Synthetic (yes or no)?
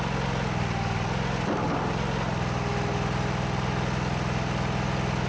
no